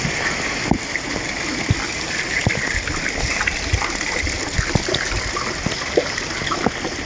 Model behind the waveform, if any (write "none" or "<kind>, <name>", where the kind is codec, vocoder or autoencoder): none